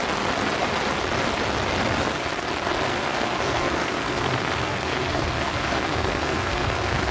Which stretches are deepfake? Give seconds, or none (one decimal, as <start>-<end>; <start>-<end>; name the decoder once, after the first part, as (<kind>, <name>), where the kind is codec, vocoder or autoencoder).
2.9-7.1 (codec, SNAC)